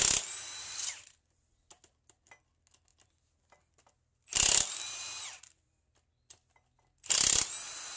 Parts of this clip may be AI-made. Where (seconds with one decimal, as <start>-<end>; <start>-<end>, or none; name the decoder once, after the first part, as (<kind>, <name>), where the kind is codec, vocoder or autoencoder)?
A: none